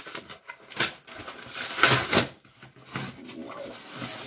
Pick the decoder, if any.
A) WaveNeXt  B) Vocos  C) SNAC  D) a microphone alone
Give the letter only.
D